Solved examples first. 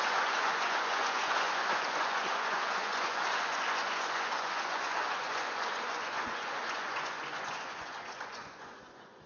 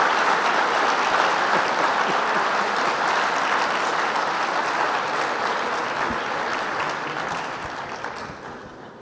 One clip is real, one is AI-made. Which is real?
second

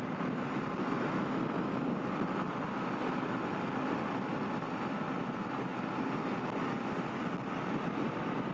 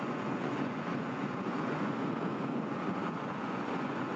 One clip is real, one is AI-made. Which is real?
first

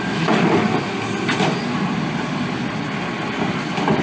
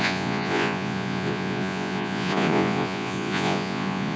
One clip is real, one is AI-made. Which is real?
first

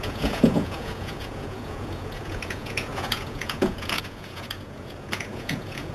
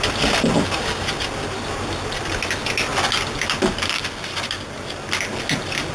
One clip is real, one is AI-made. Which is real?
second